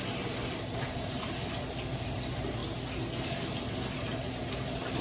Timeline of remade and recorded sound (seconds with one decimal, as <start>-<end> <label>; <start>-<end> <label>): 0.0-5.0 recorded